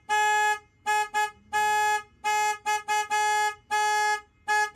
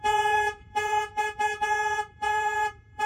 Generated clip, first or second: second